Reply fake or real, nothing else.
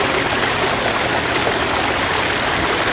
real